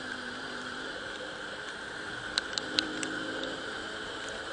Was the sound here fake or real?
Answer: fake